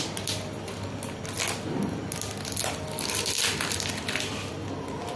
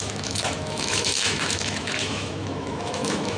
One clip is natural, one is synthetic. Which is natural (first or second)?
first